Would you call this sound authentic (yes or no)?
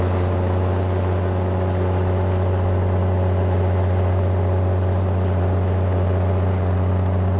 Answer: yes